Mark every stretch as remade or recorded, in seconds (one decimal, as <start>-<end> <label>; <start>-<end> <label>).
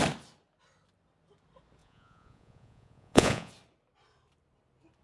0.0-1.8 recorded; 1.8-3.5 remade; 3.5-5.0 recorded